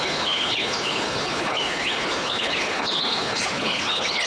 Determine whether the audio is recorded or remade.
remade